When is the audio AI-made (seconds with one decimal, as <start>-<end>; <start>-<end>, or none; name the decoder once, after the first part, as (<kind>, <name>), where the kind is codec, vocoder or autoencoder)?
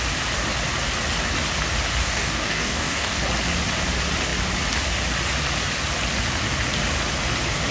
2.0-3.2 (codec, DAC)